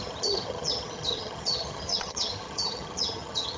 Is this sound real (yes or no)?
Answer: no